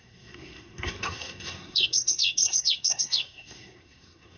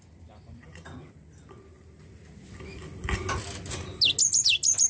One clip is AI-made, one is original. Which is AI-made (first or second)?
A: first